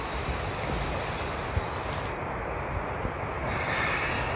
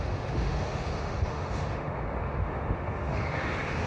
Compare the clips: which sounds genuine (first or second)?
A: first